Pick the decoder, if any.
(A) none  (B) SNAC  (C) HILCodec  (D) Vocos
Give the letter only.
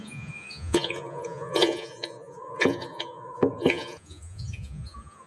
D